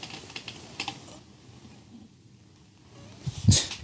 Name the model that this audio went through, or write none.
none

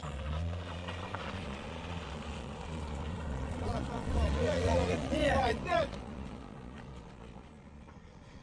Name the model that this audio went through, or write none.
vocoder, Vocos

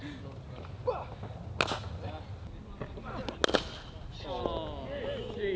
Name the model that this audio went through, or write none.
none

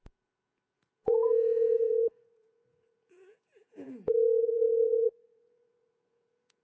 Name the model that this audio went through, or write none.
vocoder, Vocos